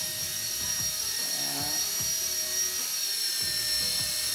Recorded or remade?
recorded